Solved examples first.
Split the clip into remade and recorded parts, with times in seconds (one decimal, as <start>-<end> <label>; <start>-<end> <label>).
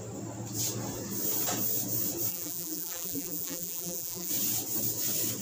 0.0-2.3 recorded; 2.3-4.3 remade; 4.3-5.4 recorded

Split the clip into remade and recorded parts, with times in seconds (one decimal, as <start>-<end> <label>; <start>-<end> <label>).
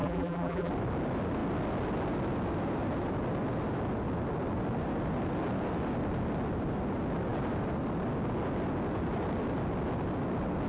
0.0-0.7 remade; 0.7-10.7 recorded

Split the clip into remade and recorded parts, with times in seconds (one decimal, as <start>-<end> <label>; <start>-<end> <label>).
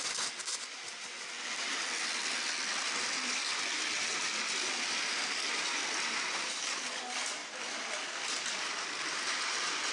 0.0-9.9 recorded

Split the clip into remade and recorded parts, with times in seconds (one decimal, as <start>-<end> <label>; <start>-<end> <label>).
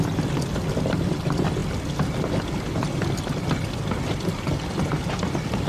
0.0-5.7 recorded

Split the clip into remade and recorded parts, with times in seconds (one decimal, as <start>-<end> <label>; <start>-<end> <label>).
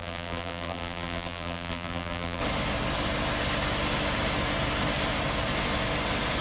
0.0-2.4 remade; 2.4-6.4 recorded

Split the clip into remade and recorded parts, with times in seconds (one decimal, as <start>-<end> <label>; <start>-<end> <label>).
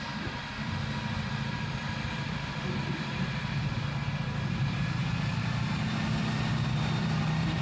0.0-5.0 remade; 5.0-6.2 recorded; 6.2-7.6 remade